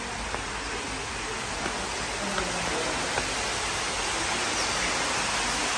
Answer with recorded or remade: recorded